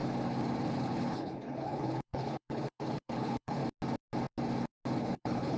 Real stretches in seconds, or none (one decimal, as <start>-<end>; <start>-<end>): 0.0-0.7; 3.6-5.0